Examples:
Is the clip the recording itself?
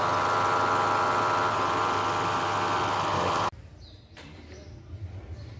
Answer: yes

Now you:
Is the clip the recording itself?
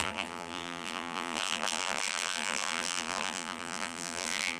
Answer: no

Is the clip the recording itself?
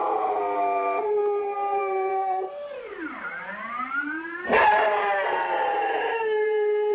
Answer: no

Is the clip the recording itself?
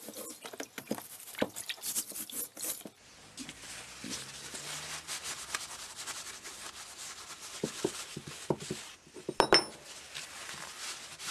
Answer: yes